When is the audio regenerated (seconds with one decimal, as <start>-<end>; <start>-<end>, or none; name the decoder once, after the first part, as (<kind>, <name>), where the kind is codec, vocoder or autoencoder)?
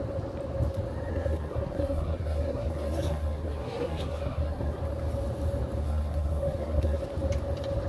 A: 1.1-4.8 (codec, SNAC); 5.8-7.0